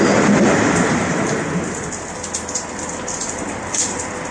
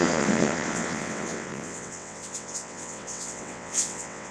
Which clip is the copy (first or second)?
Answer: second